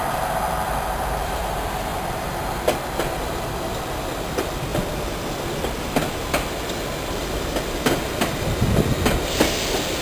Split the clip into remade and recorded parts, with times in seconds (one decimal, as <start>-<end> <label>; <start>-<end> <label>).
0.0-4.7 remade; 4.7-6.5 recorded; 6.5-10.0 remade